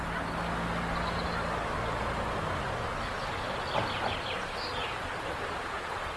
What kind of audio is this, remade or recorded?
recorded